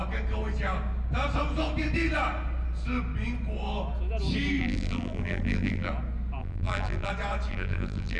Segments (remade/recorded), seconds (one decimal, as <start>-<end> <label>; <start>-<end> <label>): 0.0-4.6 recorded; 4.6-5.9 remade; 5.9-6.4 recorded; 6.4-7.1 remade; 7.1-7.5 recorded; 7.5-8.2 remade